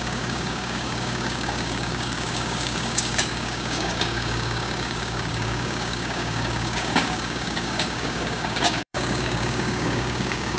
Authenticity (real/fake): fake